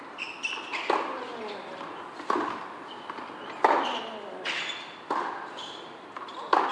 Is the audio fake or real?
real